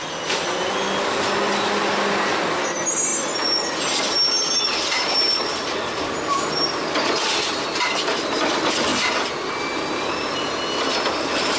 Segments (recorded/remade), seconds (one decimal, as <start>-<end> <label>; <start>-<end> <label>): 0.0-11.6 recorded